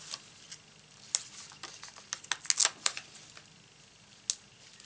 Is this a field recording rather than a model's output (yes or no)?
yes